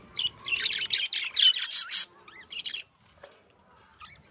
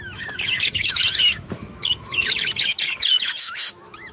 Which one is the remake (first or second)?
second